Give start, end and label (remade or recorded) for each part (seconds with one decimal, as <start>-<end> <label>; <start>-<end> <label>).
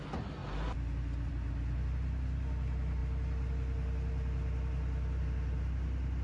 0.0-6.2 recorded